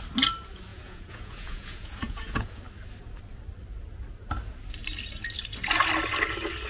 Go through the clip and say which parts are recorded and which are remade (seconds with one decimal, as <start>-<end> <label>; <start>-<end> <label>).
0.0-0.7 recorded; 0.7-2.6 remade; 2.6-6.7 recorded